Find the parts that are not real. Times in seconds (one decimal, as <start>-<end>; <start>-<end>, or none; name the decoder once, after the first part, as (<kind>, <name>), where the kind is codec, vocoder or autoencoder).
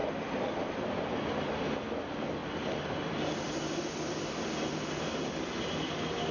none